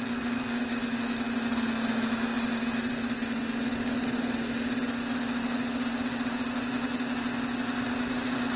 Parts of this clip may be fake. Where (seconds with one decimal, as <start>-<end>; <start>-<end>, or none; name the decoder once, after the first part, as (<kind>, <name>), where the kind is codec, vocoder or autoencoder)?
none